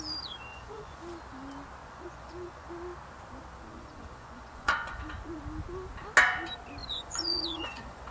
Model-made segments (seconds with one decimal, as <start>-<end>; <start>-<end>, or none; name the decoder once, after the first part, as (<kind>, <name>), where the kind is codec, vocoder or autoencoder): 0.5-1.0 (vocoder, Vocos); 1.8-2.7; 3.7-5.4; 6.8-8.1